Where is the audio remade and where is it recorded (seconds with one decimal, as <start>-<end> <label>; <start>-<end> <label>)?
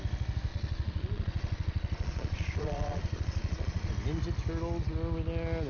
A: 0.0-0.5 recorded; 0.5-3.9 remade; 3.9-5.7 recorded